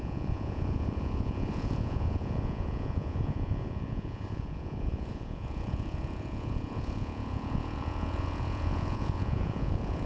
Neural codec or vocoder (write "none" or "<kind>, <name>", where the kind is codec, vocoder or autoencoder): vocoder, Vocos